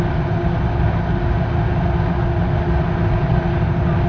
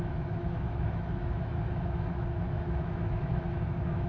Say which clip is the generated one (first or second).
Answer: second